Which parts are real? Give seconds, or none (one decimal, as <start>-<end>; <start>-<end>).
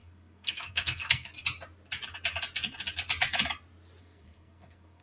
1.3-4.0